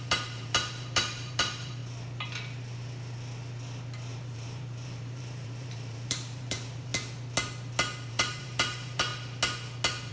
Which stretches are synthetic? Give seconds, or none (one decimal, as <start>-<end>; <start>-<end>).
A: 0.0-1.8; 4.1-6.9; 8.1-9.1